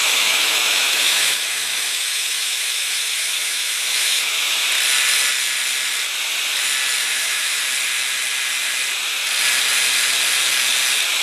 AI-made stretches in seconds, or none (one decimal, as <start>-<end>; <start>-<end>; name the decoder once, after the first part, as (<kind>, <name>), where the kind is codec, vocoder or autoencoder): 0.0-4.5 (autoencoder, DAC-VAE); 7.0-7.6